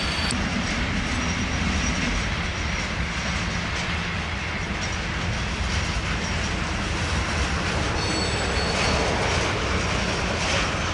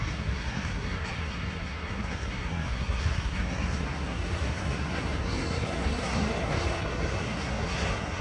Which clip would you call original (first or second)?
first